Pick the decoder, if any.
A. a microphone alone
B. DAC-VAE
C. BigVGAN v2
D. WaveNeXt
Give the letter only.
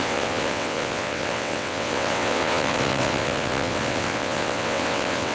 D